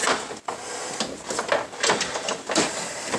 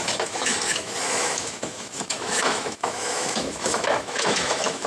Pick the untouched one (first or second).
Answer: first